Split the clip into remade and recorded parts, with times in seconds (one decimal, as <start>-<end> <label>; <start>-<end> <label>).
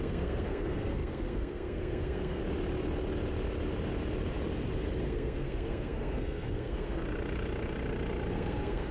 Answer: 0.0-2.4 remade; 2.4-5.0 recorded; 5.0-7.0 remade; 7.0-8.3 recorded; 8.3-8.9 remade